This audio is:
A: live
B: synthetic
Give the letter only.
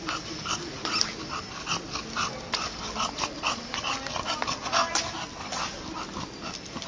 A